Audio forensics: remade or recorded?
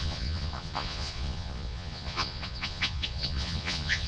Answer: remade